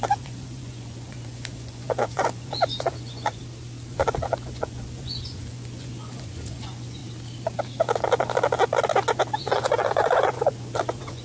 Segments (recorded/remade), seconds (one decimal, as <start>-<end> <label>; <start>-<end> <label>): 0.0-3.4 remade; 3.4-3.9 recorded; 3.9-7.0 remade; 7.0-9.4 recorded; 9.4-11.2 remade